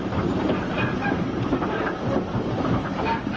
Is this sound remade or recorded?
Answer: remade